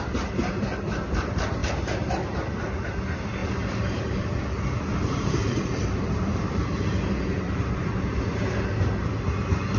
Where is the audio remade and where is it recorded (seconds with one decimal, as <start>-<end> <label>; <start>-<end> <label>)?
0.0-1.6 recorded; 1.6-2.1 remade; 2.1-3.4 recorded; 3.4-8.4 remade; 8.4-9.8 recorded